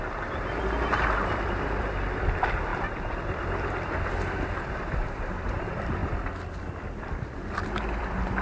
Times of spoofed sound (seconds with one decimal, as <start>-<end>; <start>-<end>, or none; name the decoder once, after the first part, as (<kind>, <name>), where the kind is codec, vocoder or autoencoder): 0.0-8.4 (vocoder, BigVGAN v2)